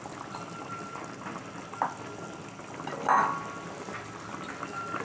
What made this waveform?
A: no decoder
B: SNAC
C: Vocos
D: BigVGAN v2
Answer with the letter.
A